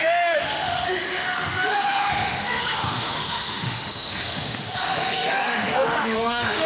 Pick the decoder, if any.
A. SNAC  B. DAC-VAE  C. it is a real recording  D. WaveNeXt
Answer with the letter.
B